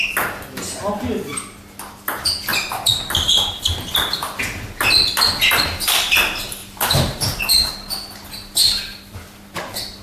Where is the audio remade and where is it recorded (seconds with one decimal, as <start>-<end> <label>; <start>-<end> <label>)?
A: 0.0-6.6 recorded; 6.6-7.4 remade; 7.4-8.9 recorded; 8.9-9.4 remade; 9.4-10.0 recorded

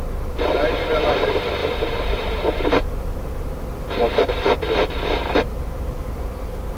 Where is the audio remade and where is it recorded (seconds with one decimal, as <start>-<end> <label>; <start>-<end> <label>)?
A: 0.0-6.8 remade

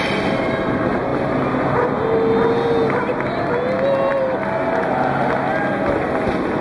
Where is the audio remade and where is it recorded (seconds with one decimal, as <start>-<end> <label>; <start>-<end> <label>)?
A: 0.0-6.6 recorded

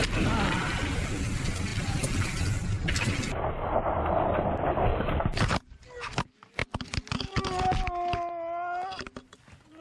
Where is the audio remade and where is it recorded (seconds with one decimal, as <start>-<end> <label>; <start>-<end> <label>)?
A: 0.0-4.9 recorded; 4.9-5.8 remade; 5.8-9.8 recorded

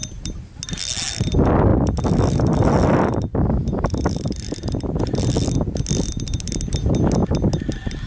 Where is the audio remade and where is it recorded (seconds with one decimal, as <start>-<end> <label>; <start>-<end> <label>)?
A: 0.0-0.6 remade; 0.6-8.1 recorded

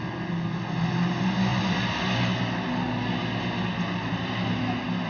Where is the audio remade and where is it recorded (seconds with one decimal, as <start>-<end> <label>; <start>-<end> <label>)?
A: 0.0-1.5 recorded; 1.5-2.4 remade; 2.4-4.1 recorded; 4.1-4.6 remade; 4.6-5.1 recorded